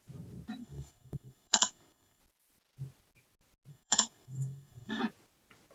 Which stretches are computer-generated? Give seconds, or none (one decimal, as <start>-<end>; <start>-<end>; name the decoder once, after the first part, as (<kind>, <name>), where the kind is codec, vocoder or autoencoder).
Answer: 0.6-2.2 (codec, SNAC); 3.7-5.0